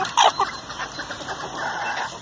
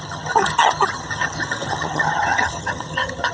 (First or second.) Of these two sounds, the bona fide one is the first